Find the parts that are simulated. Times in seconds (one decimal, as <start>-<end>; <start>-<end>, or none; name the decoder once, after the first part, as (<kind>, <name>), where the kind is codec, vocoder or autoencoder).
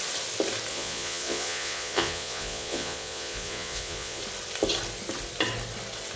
0.7-4.2 (vocoder, Vocos)